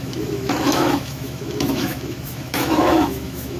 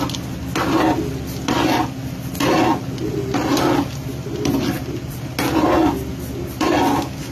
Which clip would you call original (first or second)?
second